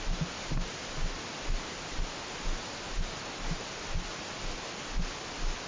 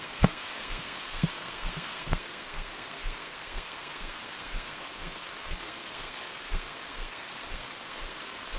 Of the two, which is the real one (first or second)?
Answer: first